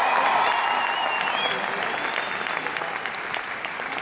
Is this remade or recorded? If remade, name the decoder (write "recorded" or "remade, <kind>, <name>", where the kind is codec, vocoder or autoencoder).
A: recorded